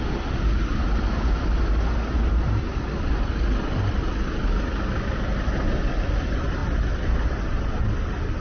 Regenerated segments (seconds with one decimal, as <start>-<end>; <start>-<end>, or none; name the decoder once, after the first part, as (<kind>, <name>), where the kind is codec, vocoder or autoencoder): none